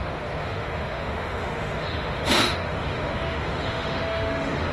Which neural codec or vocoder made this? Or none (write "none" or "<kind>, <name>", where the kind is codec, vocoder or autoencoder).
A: autoencoder, DAC-VAE